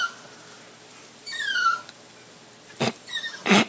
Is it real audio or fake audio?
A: real